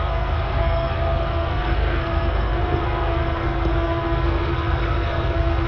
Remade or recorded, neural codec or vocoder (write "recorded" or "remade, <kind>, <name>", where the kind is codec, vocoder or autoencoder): remade, codec, SNAC